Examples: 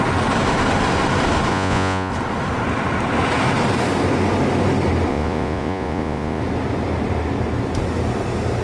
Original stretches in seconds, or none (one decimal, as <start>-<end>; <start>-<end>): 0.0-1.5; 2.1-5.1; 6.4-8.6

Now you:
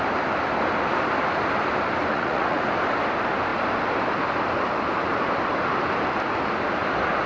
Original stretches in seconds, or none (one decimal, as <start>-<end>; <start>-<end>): 0.0-2.1; 2.6-7.3

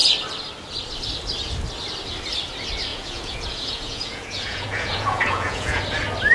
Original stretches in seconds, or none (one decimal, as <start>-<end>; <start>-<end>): 0.0-2.9; 5.8-6.3

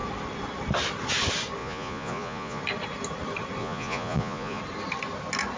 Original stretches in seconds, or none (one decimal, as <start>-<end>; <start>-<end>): 0.0-1.6; 2.6-3.6; 4.6-5.6

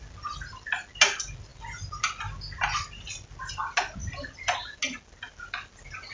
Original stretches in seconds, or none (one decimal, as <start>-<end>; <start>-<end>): 0.0-6.1

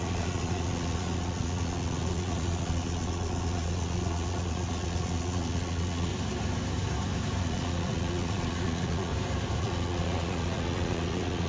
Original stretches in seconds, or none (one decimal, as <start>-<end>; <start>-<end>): 6.1-7.4; 9.1-9.6